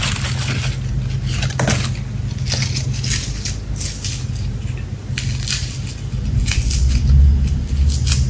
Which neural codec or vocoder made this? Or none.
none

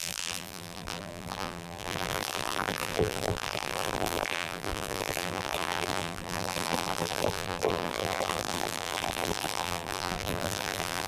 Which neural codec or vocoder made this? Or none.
vocoder, BigVGAN v2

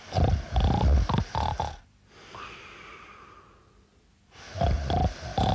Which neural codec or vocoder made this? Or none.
none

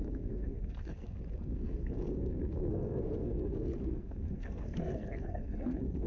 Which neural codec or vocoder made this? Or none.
codec, SNAC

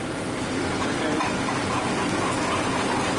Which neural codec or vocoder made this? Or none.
none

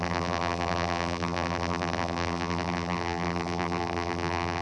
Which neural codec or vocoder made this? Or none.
vocoder, BigVGAN v2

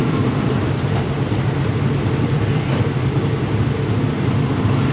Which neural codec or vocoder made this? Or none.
vocoder, BigVGAN v2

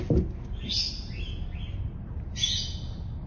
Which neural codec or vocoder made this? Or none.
none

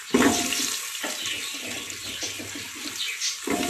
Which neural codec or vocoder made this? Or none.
none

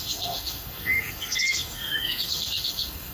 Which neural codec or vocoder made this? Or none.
codec, SNAC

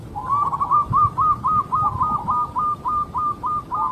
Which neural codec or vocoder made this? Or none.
none